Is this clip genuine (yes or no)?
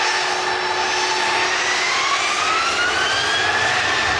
yes